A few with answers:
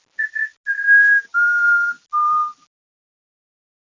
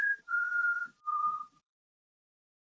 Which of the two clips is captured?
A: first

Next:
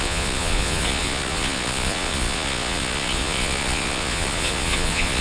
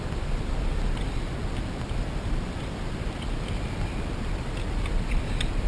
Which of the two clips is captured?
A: second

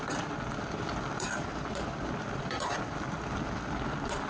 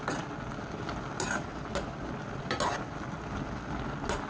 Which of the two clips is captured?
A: second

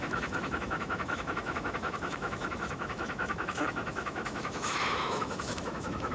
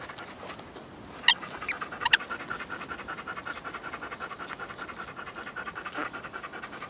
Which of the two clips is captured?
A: second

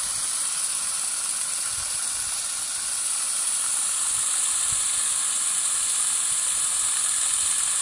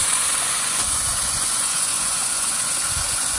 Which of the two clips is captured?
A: first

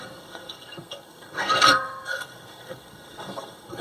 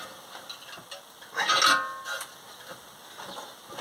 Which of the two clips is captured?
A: second